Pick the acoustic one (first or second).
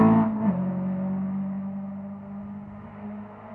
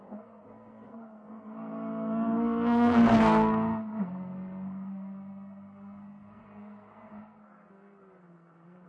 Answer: first